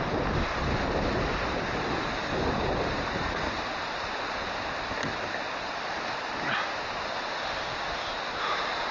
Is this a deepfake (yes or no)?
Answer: no